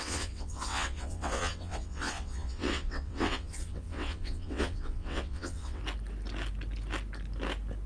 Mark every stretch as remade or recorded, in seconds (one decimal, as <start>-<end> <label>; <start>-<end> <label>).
0.0-5.8 remade; 5.8-7.9 recorded